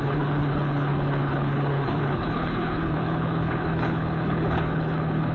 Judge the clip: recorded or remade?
remade